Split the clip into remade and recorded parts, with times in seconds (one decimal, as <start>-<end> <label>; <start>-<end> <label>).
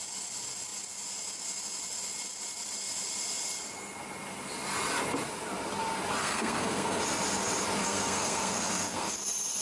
0.0-6.2 recorded; 6.2-7.0 remade; 7.0-7.8 recorded; 7.8-9.2 remade; 9.2-9.6 recorded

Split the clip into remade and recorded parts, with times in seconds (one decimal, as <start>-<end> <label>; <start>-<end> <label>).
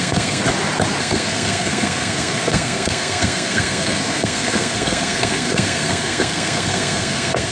0.0-0.4 remade; 0.4-1.0 recorded; 1.0-7.5 remade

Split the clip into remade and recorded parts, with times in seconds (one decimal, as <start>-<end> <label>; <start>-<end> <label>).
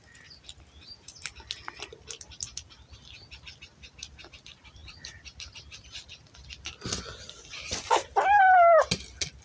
0.0-9.4 recorded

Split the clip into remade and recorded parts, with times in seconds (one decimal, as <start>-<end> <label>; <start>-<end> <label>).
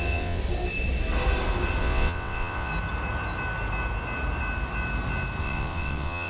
0.0-0.4 remade; 0.4-1.8 recorded; 1.8-2.7 remade; 2.7-5.4 recorded; 5.4-6.3 remade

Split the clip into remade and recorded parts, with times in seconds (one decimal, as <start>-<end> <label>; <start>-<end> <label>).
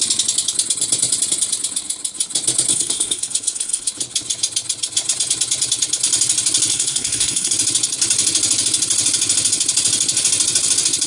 0.0-2.7 recorded; 2.7-3.9 remade; 3.9-6.7 recorded; 6.7-7.5 remade; 7.5-11.1 recorded